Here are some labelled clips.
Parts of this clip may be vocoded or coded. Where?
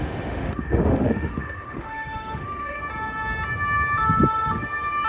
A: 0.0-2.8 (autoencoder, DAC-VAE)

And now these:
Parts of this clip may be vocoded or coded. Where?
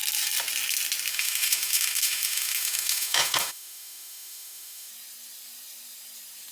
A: 1.1-4.9 (autoencoder, DAC-VAE)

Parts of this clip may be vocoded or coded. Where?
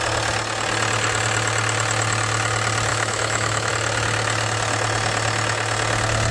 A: 2.9-3.7 (autoencoder, DAC-VAE)